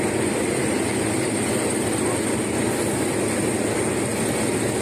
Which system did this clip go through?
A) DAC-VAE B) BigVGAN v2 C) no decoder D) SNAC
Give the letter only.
C